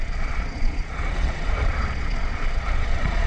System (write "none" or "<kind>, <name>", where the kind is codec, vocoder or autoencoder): vocoder, Vocos